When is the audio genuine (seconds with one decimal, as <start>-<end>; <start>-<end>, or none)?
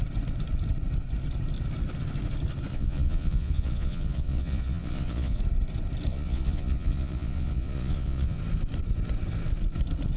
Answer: 0.0-2.7; 5.4-6.1; 8.4-10.2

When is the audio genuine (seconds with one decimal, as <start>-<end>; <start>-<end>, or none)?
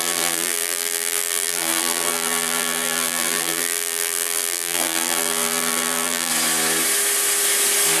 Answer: 6.3-8.0